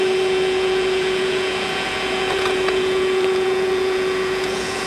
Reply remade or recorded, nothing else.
remade